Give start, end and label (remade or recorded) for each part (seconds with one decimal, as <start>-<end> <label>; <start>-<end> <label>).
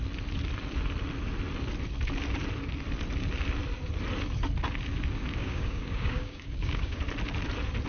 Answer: 0.0-5.4 recorded; 5.4-7.0 remade; 7.0-7.9 recorded